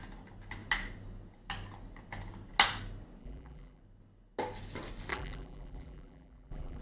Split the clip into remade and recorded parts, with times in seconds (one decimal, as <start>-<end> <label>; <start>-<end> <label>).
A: 0.0-3.2 recorded; 3.2-3.8 remade; 3.8-5.1 recorded; 5.1-6.8 remade